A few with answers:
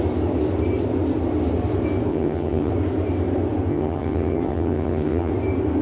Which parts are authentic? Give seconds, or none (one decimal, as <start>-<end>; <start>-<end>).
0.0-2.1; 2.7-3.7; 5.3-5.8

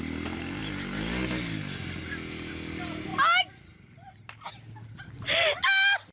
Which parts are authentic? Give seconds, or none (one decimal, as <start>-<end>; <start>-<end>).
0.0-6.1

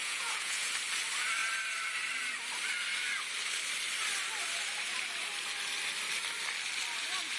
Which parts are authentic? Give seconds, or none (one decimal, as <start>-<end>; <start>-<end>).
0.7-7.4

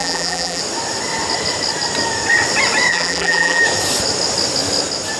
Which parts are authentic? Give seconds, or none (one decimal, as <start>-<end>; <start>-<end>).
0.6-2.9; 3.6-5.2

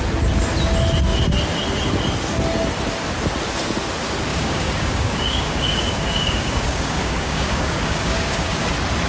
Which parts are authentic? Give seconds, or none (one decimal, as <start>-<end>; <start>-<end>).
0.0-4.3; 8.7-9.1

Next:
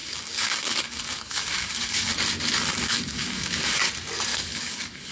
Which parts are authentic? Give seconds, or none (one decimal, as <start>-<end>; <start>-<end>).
2.1-2.7; 3.9-4.3